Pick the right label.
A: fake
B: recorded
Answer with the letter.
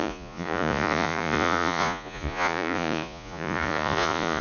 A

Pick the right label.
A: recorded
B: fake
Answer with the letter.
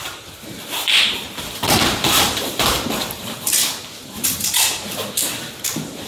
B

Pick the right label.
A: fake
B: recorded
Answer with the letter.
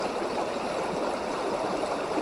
B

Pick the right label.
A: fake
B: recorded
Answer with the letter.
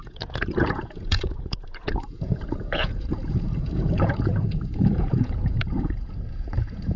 A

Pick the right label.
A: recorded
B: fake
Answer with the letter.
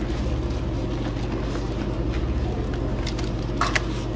A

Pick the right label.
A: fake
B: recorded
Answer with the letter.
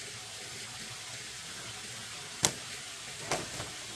B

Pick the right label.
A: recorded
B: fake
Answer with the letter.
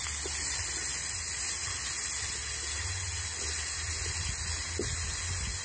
A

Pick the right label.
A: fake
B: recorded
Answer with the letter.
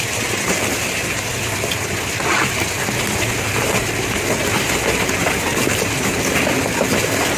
B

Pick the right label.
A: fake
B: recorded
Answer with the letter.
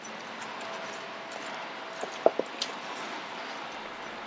B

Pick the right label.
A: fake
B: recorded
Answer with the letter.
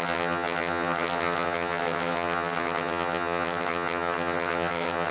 A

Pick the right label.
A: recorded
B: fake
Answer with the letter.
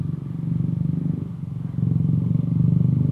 A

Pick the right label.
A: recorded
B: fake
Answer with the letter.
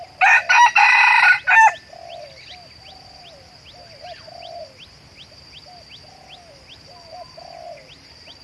A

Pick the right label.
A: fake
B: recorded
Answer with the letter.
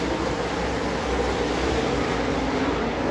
B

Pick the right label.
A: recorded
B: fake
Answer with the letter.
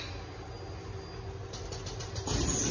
A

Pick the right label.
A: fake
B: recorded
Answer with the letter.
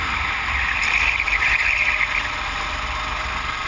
B